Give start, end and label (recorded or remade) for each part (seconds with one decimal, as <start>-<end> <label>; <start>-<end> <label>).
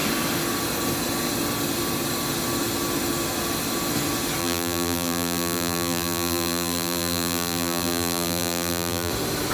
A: 0.0-4.4 recorded; 4.4-9.1 remade; 9.1-9.5 recorded